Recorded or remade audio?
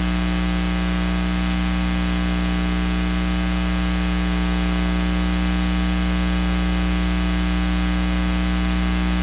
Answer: recorded